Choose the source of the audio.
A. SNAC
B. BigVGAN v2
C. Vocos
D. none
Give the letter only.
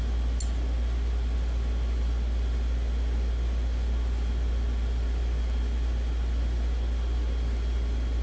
D